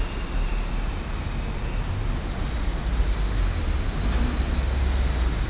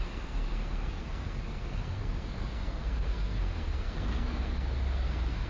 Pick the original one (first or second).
first